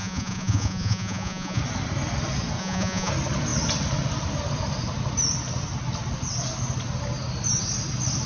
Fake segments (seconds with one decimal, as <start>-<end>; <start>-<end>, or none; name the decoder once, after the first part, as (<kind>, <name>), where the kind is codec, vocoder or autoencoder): 0.0-1.6 (vocoder, Vocos); 2.6-3.1